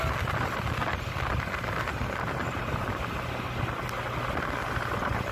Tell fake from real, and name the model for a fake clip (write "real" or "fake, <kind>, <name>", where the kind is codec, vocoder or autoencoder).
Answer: real